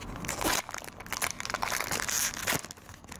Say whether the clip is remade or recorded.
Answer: recorded